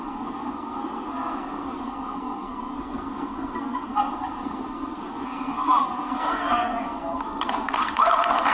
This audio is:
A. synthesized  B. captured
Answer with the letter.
A